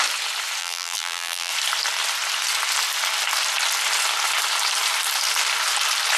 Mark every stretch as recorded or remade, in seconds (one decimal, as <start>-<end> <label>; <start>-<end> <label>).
0.0-0.6 recorded; 0.6-1.5 remade; 1.5-6.2 recorded